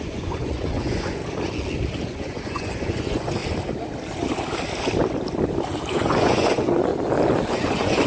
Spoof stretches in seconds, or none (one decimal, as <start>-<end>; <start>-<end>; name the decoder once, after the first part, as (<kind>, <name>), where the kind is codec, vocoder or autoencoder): 0.0-1.2 (vocoder, Vocos); 2.0-3.4; 5.9-6.9; 7.5-8.1